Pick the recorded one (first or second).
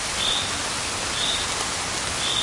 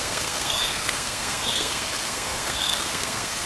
first